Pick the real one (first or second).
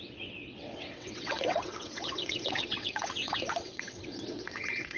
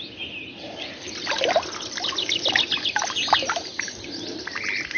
second